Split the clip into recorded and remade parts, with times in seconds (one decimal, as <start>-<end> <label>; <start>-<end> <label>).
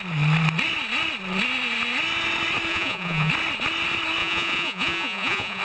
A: 0.0-2.7 recorded; 2.7-3.3 remade; 3.3-4.2 recorded; 4.2-5.6 remade